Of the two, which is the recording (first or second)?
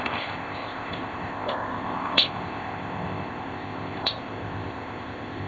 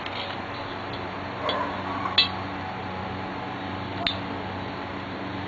second